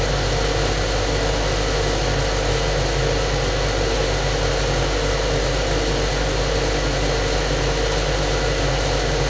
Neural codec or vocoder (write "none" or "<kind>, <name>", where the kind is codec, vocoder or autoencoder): none